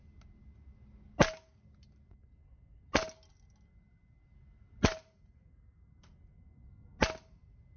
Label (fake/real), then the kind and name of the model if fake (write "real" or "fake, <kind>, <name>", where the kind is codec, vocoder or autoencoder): real